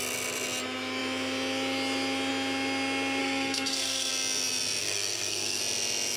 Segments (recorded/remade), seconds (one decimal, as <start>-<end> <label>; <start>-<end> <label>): 0.0-3.2 recorded; 3.2-4.1 remade; 4.1-4.8 recorded; 4.8-5.6 remade; 5.6-6.2 recorded